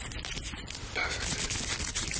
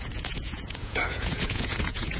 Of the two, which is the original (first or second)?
first